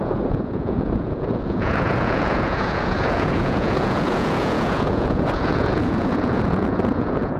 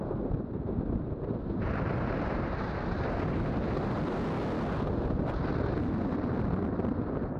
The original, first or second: second